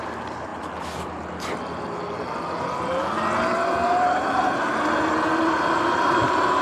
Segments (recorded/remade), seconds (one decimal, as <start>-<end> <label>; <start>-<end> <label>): 0.0-6.6 recorded